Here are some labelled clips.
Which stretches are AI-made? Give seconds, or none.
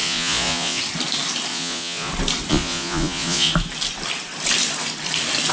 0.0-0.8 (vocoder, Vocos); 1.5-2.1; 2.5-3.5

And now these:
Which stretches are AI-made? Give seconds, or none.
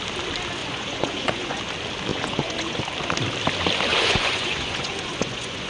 0.6-1.6 (vocoder, Vocos); 2.1-2.8; 3.9-5.7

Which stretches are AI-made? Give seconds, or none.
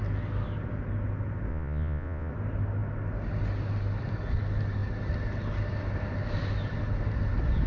1.5-2.3 (vocoder, Vocos)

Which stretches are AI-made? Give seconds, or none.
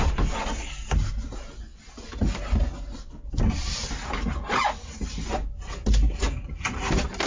none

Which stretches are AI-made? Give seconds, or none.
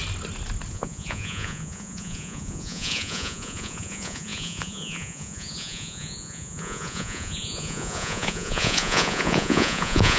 0.7-10.2 (vocoder, Vocos)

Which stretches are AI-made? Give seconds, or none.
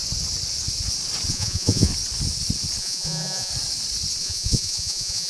1.3-1.9 (vocoder, Vocos); 2.8-3.5; 4.2-5.3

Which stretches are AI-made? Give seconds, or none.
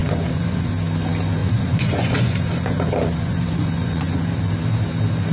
0.0-0.7 (vocoder, Vocos); 1.4-4.4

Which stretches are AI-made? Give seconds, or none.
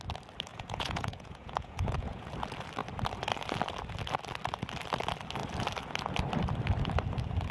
0.5-2.3 (vocoder, Vocos)